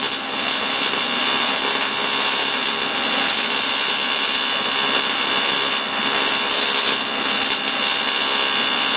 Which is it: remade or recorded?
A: recorded